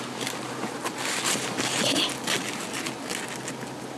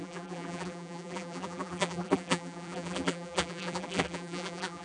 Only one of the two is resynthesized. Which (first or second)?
second